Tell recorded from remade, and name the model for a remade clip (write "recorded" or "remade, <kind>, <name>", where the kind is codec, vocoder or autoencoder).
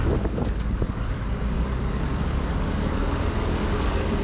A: remade, codec, DAC